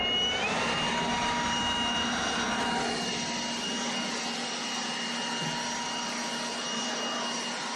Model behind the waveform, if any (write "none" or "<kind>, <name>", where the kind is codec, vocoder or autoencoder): none